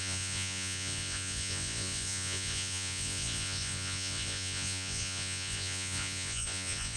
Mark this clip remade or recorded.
remade